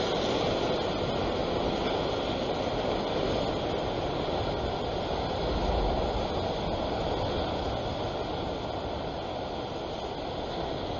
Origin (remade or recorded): recorded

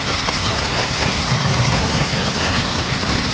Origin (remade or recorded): remade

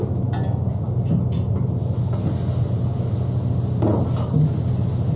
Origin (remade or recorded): recorded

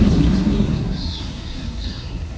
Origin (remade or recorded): remade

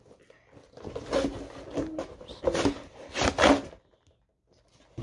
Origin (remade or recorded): recorded